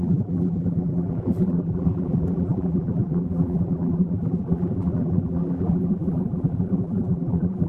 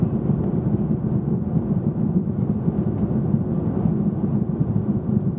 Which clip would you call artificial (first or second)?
first